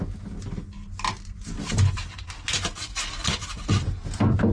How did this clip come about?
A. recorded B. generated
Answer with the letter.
A